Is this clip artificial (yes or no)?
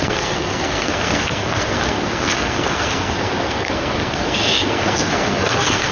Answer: yes